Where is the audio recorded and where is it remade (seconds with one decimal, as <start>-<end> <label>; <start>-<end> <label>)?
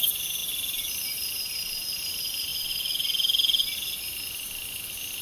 0.0-0.4 remade; 0.4-1.0 recorded; 1.0-2.5 remade; 2.5-5.2 recorded